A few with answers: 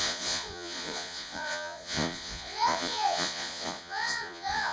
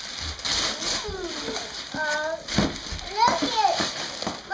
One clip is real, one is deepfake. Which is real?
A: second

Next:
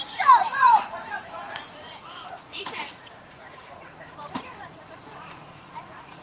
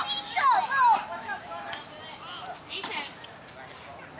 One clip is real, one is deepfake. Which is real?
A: second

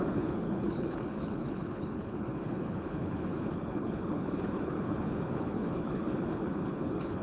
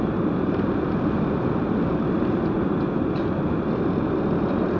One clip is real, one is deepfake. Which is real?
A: second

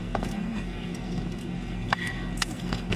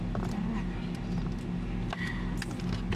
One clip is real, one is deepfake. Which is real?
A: second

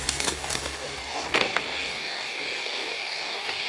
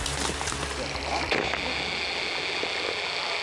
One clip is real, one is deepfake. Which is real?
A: second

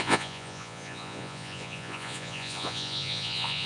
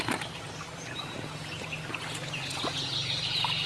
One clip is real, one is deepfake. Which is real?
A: second